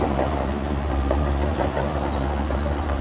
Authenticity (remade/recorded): remade